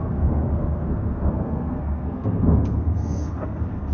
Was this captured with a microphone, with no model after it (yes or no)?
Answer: no